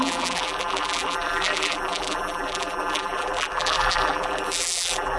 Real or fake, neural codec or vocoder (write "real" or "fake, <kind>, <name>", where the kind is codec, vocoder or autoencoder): fake, vocoder, BigVGAN v2